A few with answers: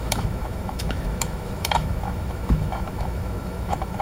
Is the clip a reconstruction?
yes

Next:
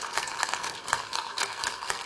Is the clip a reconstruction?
yes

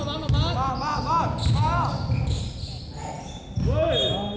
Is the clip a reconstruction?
no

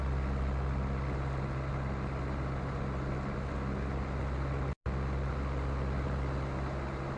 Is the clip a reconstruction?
no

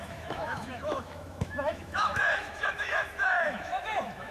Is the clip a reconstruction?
yes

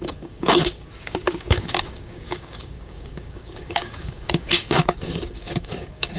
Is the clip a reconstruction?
yes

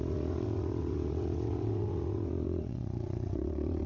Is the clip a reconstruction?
yes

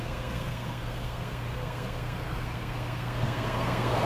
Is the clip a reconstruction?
yes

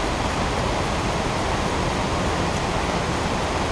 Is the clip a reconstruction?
no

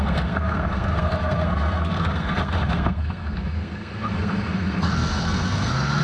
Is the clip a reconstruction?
yes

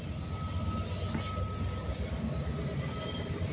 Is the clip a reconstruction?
no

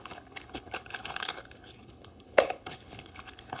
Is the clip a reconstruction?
yes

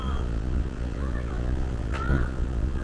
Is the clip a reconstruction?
yes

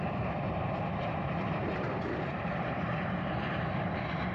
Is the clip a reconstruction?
yes